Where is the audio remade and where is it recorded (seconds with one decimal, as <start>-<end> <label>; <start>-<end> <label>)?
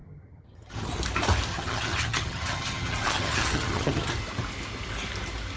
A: 0.0-0.9 remade; 0.9-1.5 recorded; 1.5-4.1 remade; 4.1-5.6 recorded